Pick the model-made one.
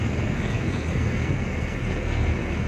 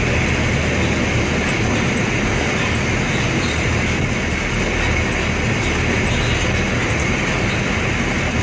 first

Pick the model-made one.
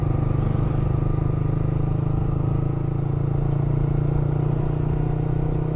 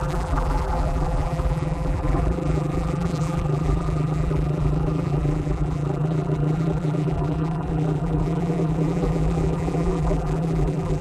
second